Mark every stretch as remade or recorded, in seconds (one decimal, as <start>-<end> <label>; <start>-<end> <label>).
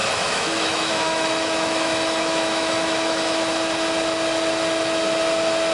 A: 0.0-3.4 remade; 3.4-5.7 recorded